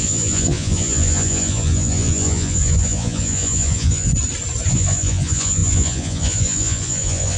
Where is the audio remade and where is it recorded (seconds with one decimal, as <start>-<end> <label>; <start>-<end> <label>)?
0.0-4.1 remade; 4.1-4.7 recorded; 4.7-7.4 remade